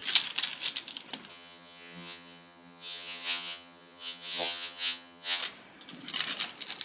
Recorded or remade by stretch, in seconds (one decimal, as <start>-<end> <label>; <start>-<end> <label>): 0.0-1.3 recorded; 1.3-5.4 remade; 5.4-6.8 recorded